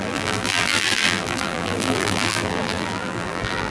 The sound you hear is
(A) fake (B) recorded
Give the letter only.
A